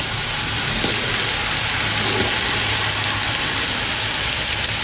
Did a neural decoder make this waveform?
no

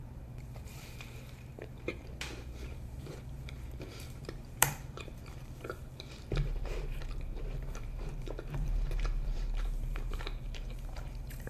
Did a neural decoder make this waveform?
yes